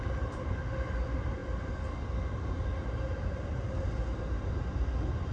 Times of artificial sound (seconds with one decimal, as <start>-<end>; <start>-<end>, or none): none